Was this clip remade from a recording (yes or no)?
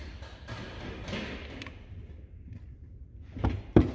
no